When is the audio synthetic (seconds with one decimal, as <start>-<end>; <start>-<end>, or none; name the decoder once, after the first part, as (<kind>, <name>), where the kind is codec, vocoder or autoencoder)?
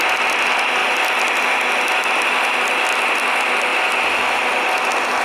none